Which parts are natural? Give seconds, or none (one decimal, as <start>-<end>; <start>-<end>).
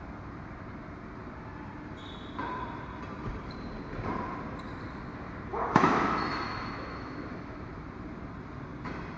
0.0-5.5; 7.7-9.2